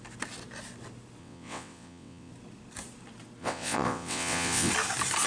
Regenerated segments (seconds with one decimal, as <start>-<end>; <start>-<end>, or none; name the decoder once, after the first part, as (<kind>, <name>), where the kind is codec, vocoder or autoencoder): 1.2-2.3 (vocoder, WaveNeXt); 3.4-4.7